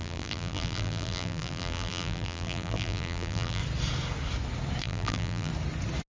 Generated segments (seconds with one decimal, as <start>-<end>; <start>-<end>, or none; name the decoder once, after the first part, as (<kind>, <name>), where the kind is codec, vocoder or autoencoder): 0.0-3.6 (vocoder, BigVGAN v2); 4.8-5.5